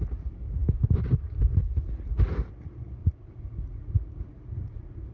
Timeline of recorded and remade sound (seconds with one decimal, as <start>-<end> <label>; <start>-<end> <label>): 0.0-3.0 recorded; 3.0-5.1 remade